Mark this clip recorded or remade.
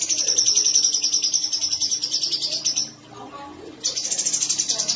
recorded